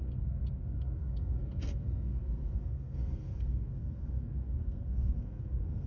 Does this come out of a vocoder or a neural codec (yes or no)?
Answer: yes